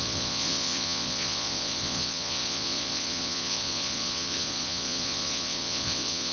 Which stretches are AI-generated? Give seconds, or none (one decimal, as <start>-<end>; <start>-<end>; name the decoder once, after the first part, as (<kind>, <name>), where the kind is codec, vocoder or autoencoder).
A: 0.0-6.3 (vocoder, Vocos)